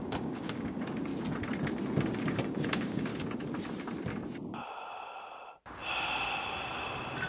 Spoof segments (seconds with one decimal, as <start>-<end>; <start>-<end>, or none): 0.0-1.1; 2.2-3.1

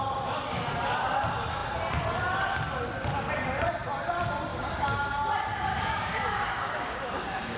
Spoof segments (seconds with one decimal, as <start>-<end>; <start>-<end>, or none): 4.5-5.1; 5.7-7.6

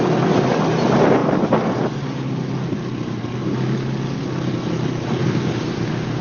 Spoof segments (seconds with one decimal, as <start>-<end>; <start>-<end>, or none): 5.2-6.2

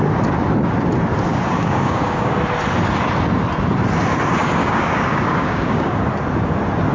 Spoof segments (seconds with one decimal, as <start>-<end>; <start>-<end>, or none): 1.3-2.4; 4.6-6.0

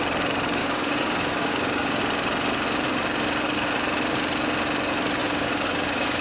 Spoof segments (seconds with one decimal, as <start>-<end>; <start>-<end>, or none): 0.6-2.0; 5.2-6.2

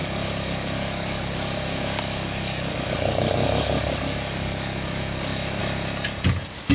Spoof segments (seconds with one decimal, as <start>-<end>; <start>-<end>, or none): 0.0-5.6

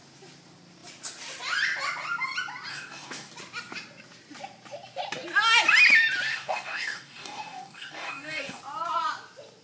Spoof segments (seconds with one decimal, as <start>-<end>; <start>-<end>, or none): 2.7-3.3; 6.3-8.6